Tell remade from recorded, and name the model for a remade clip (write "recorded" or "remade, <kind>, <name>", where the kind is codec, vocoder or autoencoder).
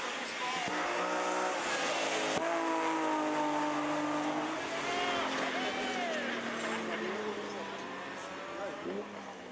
recorded